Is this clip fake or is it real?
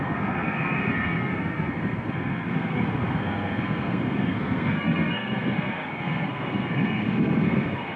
fake